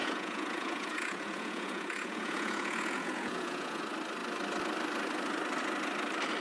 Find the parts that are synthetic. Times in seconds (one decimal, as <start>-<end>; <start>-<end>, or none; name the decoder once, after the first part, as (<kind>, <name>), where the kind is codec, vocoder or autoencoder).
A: 0.0-3.8 (vocoder, Vocos)